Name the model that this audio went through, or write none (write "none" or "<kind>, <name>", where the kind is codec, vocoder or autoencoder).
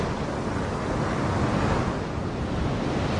none